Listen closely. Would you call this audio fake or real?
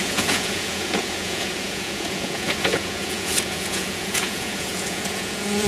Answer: fake